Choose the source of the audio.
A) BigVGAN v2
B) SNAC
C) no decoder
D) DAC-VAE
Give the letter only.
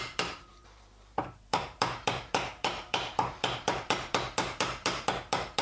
A